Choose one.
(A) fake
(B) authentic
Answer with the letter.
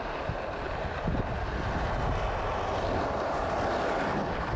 B